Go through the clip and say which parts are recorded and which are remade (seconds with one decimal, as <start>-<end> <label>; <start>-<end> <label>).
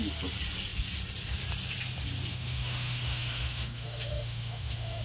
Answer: 0.0-2.3 recorded; 2.3-5.0 remade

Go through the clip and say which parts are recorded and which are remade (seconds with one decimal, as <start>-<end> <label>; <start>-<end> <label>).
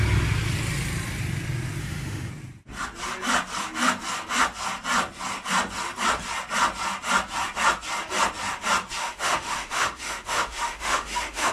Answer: 0.0-1.8 recorded; 1.8-2.3 remade; 2.3-9.0 recorded; 9.0-11.5 remade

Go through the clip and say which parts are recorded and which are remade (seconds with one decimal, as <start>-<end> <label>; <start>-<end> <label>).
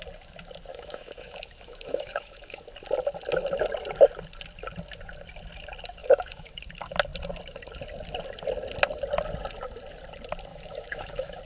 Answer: 0.0-0.7 recorded; 0.7-2.6 remade; 2.6-6.0 recorded; 6.0-6.5 remade; 6.5-10.5 recorded; 10.5-11.4 remade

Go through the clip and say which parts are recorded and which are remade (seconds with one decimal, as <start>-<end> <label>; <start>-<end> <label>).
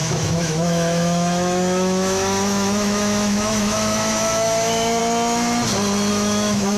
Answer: 0.0-5.0 remade; 5.0-6.1 recorded; 6.1-6.8 remade